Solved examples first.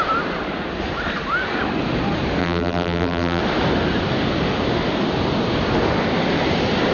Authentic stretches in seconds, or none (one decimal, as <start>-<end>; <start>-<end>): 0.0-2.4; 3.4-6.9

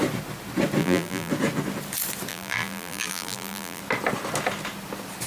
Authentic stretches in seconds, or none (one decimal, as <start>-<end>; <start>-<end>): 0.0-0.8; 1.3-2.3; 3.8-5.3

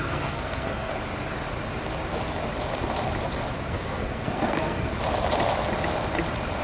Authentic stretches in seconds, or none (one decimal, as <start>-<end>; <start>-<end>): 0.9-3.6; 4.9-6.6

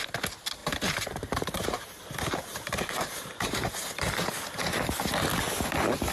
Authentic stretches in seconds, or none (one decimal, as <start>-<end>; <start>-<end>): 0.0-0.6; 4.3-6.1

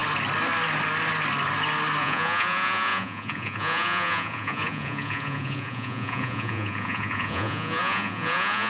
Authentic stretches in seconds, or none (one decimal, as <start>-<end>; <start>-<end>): 0.0-2.0

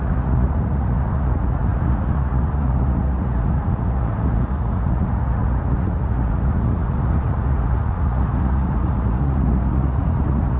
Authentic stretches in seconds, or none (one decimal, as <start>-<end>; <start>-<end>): none

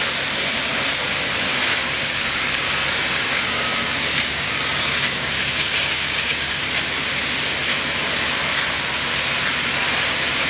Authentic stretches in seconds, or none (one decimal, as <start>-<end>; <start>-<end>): 0.0-1.5; 6.6-10.5